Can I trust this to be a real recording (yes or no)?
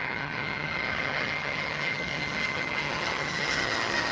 no